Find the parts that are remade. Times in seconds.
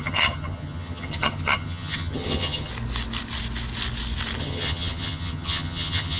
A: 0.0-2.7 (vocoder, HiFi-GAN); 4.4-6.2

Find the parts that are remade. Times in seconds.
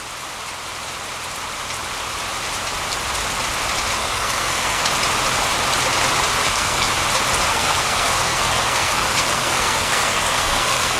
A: 4.0-4.9 (codec, SNAC); 6.4-6.9; 7.5-11.0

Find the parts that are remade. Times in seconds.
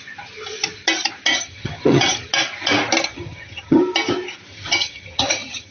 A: 1.3-2.3 (vocoder, HiFi-GAN); 3.1-3.8; 4.5-5.7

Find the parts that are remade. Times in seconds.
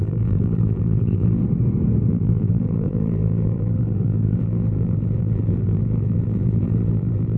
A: 0.0-1.4 (vocoder, BigVGAN v2); 2.1-7.4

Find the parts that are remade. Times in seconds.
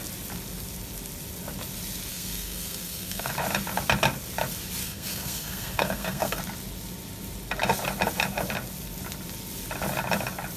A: 2.1-3.3 (codec, SNAC); 4.8-6.4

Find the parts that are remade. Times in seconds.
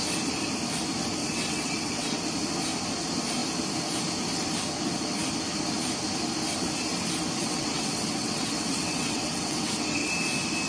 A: 1.2-2.2 (vocoder, WaveNeXt); 7.4-10.1